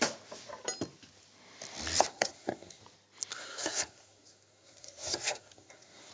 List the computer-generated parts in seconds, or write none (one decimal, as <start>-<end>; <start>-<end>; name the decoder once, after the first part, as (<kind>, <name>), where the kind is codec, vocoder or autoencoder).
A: 2.1-2.8 (codec, SNAC); 3.3-6.1